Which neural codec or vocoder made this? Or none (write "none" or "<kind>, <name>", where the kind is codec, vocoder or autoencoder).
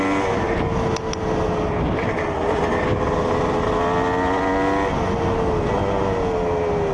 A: none